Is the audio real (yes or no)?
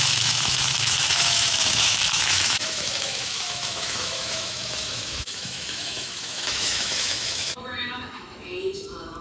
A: no